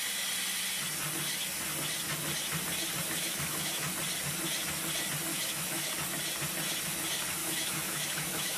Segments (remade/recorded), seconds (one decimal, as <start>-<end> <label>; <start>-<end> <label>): 0.0-3.2 recorded; 3.2-3.9 remade; 3.9-5.3 recorded; 5.3-5.9 remade; 5.9-7.4 recorded; 7.4-8.6 remade